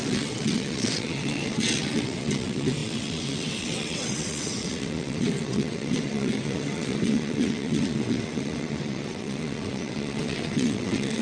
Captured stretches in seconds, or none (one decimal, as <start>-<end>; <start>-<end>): none